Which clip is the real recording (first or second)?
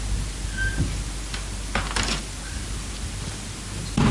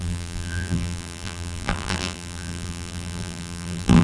first